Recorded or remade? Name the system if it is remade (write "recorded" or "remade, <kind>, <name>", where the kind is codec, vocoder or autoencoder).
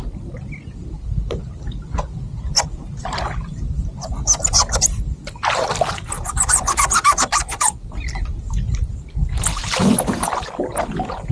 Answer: recorded